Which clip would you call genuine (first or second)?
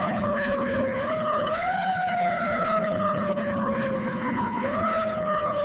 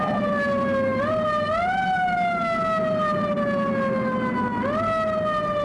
second